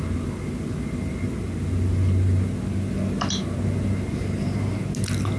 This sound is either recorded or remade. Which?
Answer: recorded